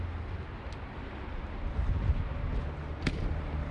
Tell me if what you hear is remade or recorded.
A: recorded